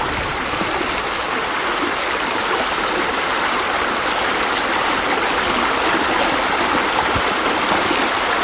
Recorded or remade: recorded